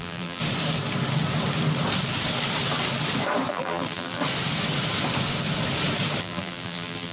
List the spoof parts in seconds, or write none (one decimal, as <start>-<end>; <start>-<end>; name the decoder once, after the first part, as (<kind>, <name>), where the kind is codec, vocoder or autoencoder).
0.0-0.4 (vocoder, BigVGAN v2); 3.5-4.2; 6.2-7.1